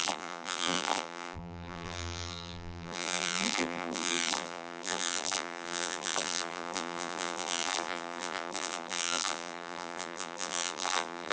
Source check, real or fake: fake